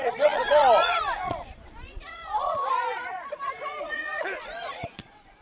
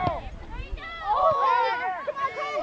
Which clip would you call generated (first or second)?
first